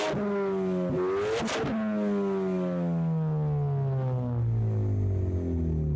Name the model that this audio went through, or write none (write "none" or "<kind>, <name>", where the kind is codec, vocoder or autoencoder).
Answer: none